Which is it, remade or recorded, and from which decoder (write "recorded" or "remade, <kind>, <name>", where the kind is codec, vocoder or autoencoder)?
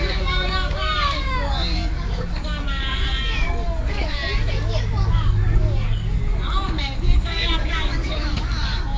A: remade, codec, DAC